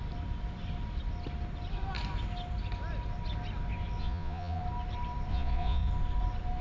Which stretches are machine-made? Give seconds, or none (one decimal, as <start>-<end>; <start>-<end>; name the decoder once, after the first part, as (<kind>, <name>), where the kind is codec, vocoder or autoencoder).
4.0-4.6 (vocoder, Vocos); 5.3-5.9